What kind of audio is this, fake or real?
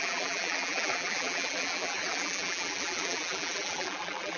fake